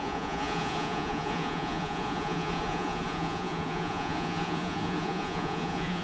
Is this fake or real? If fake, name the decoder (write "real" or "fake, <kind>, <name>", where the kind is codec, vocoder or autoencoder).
fake, vocoder, Vocos